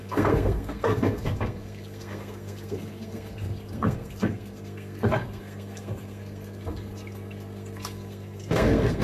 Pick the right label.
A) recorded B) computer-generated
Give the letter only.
B